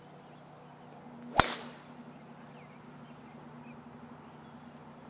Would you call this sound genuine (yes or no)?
yes